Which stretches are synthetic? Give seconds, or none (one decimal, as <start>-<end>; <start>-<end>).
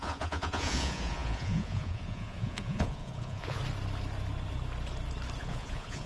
0.0-3.6; 5.4-6.1